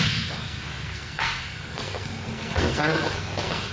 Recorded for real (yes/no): no